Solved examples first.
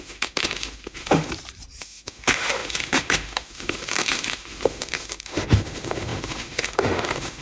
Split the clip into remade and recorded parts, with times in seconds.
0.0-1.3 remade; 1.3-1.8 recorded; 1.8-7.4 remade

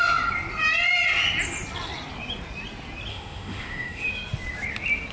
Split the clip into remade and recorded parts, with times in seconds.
0.0-3.1 recorded; 3.1-4.1 remade; 4.1-5.1 recorded

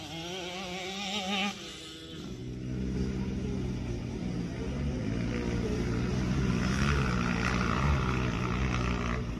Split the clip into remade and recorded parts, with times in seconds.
0.0-9.4 recorded

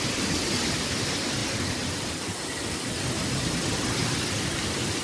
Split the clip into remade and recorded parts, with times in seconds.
0.0-5.0 recorded

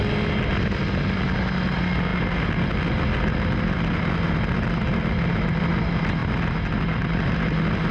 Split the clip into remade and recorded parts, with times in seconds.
0.0-7.9 recorded

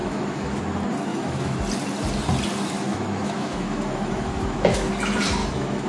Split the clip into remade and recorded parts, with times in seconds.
0.0-0.6 remade; 0.6-1.1 recorded; 1.1-1.6 remade; 1.6-2.9 recorded; 2.9-4.9 remade; 4.9-5.4 recorded; 5.4-5.9 remade

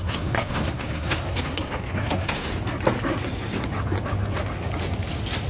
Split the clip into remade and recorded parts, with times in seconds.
0.0-2.5 remade; 2.5-5.5 recorded

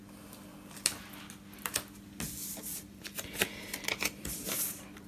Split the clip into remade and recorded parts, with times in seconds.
0.0-2.4 recorded; 2.4-5.1 remade